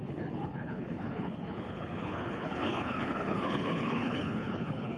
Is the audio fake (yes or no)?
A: yes